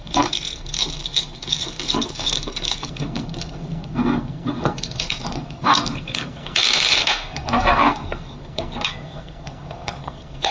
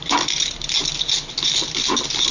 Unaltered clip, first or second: second